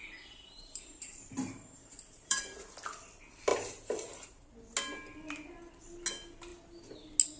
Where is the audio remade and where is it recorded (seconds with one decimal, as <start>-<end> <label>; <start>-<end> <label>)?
0.0-2.4 remade; 2.4-3.5 recorded; 3.5-4.5 remade; 4.5-7.4 recorded

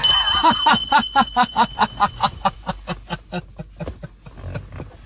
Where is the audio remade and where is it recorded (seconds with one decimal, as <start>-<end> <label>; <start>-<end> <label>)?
0.0-0.8 recorded; 0.8-2.7 remade; 2.7-5.1 recorded

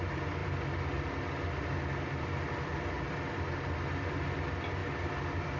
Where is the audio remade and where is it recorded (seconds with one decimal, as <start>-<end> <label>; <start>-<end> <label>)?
0.0-5.6 recorded

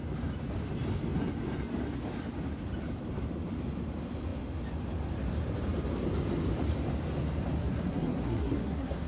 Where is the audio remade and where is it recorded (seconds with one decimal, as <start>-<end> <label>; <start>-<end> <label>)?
0.0-7.6 recorded; 7.6-9.1 remade

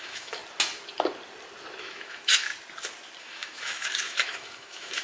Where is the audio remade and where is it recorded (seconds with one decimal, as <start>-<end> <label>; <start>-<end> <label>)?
0.0-0.4 remade; 0.4-1.8 recorded; 1.8-2.5 remade; 2.5-3.2 recorded; 3.2-5.0 remade

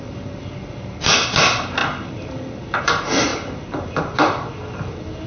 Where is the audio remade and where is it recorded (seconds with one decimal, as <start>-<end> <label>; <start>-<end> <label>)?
0.0-5.3 recorded

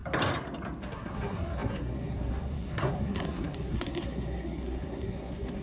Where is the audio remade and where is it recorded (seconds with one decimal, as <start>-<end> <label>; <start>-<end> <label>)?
0.0-0.9 recorded; 0.9-5.6 remade

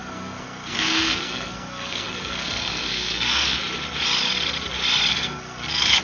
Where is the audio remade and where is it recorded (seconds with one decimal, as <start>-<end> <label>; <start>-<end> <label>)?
0.0-3.6 remade; 3.6-5.1 recorded; 5.1-6.0 remade